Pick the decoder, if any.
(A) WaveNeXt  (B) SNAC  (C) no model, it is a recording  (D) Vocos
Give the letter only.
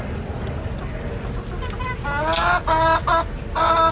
C